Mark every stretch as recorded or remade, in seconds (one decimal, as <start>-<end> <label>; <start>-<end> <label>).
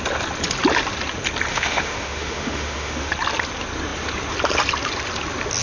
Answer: 0.0-1.5 recorded; 1.5-3.1 remade; 3.1-5.6 recorded